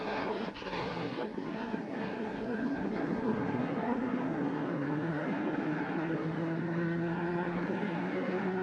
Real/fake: fake